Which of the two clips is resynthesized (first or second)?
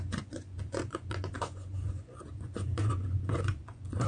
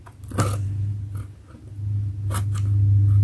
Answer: first